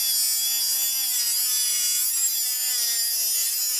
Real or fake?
real